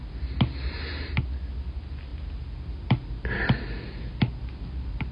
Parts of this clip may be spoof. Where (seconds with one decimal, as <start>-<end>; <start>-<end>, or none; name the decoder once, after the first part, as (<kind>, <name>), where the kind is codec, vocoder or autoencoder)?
none